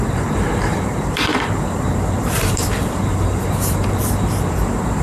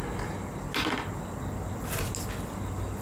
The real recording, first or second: second